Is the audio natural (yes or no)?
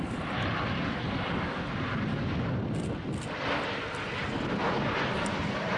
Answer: yes